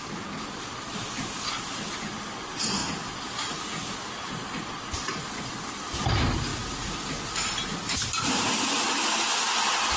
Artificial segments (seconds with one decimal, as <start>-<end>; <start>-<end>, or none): none